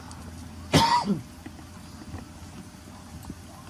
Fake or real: real